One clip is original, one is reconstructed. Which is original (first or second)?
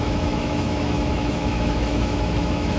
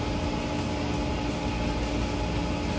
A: second